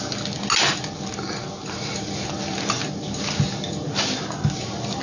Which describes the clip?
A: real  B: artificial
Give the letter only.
A